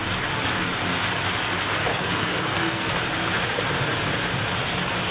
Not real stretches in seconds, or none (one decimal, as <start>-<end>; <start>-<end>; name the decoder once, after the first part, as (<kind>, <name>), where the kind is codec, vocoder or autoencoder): 1.9-2.9 (codec, SNAC)